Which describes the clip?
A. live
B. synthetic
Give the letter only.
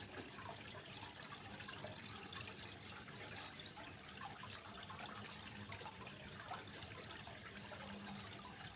B